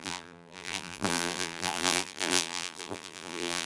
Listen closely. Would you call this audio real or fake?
fake